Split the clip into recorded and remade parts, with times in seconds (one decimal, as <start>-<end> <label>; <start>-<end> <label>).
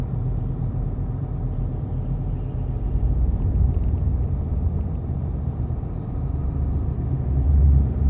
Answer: 0.0-1.9 remade; 1.9-3.5 recorded; 3.5-8.1 remade